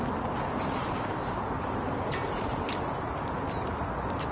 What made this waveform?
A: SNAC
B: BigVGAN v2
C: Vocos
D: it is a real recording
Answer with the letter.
D